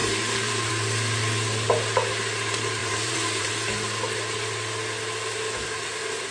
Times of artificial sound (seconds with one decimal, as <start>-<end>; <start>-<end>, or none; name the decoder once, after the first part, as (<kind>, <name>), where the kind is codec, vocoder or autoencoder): 0.0-0.7 (vocoder, BigVGAN v2); 2.8-3.5